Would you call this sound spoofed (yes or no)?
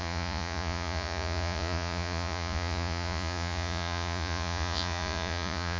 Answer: yes